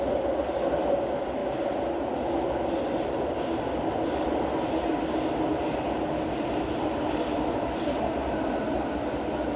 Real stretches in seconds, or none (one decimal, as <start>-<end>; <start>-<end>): 0.0-9.6